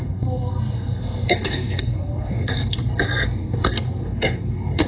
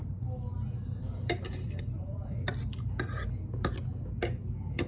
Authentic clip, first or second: second